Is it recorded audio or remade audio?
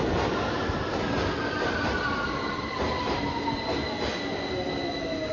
recorded